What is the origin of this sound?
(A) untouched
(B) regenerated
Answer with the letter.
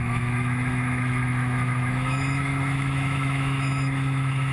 B